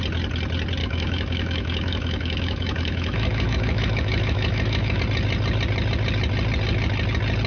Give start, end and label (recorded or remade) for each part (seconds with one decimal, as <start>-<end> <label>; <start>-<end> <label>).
0.0-0.8 recorded; 0.8-5.0 remade; 5.0-7.5 recorded